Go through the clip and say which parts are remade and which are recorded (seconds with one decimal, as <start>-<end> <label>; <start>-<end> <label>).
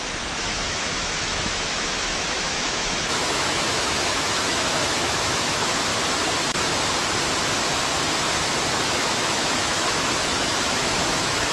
0.0-5.9 remade; 5.9-8.8 recorded; 8.8-11.5 remade